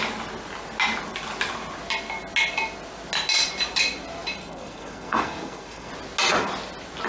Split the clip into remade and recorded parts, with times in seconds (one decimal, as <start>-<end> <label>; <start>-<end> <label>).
0.0-4.4 recorded; 4.4-5.9 remade; 5.9-7.1 recorded